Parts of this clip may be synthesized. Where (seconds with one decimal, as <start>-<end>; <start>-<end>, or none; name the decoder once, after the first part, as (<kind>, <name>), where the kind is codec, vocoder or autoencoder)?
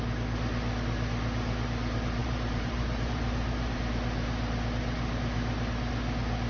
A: 2.2-3.8 (vocoder, BigVGAN v2)